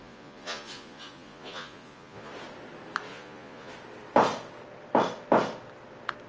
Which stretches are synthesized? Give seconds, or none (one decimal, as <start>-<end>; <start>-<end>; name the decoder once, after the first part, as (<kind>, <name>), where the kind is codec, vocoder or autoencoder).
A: 0.0-2.3 (vocoder, Vocos); 3.1-3.7